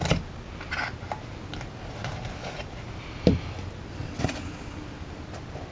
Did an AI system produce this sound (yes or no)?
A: no